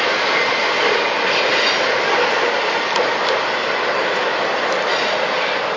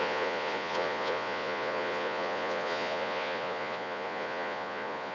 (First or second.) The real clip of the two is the first